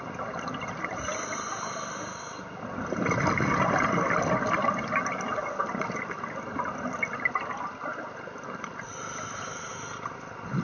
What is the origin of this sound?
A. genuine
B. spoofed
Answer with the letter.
A